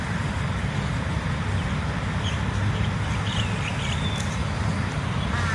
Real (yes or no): yes